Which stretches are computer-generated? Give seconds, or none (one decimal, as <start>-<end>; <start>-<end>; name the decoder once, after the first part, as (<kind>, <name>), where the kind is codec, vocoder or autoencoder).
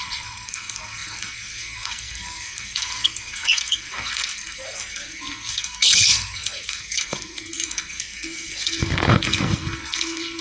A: 0.0-10.4 (codec, SNAC)